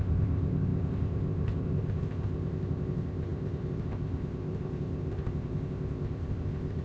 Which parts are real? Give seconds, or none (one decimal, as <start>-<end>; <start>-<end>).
none